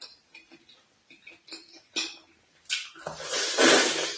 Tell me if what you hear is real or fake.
real